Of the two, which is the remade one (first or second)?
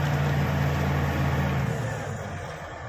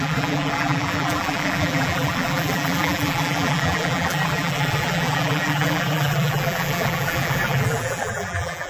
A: second